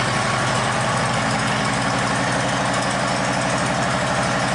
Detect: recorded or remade recorded